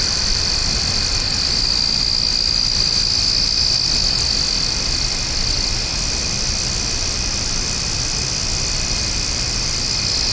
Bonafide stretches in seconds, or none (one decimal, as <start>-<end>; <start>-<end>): 0.0-10.3

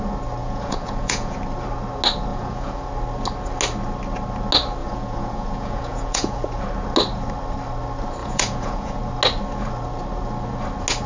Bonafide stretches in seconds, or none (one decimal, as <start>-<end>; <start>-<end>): 0.0-0.4; 1.4-2.3; 2.9-4.8; 6.6-8.2; 9.0-11.1

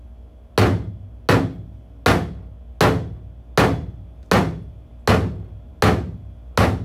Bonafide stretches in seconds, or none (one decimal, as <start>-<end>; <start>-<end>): 0.0-6.8

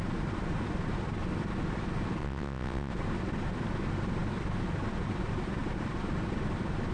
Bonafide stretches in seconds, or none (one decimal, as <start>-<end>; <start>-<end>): 0.0-2.2; 2.9-6.9

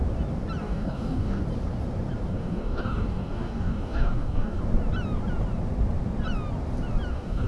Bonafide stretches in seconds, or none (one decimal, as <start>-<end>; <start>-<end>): 0.0-0.6; 1.4-2.3; 4.6-7.1

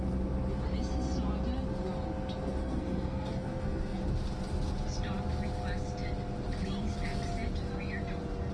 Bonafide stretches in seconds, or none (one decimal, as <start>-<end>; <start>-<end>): 0.0-2.6; 4.0-8.5

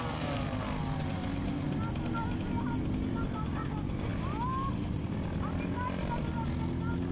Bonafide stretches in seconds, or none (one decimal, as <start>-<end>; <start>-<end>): 0.0-7.1

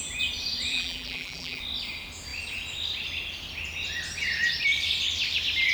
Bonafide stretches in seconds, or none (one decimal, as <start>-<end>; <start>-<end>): 0.0-0.7; 1.6-5.7